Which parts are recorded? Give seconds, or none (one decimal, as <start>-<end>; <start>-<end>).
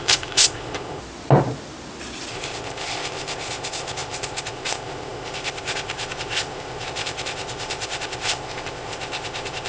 1.0-2.3